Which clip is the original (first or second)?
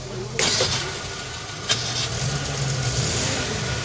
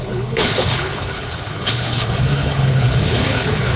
first